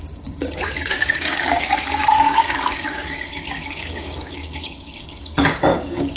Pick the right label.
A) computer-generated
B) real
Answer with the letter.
A